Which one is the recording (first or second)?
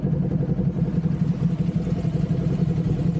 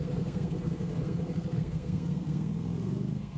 first